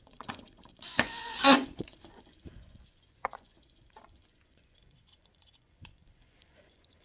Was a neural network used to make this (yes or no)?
yes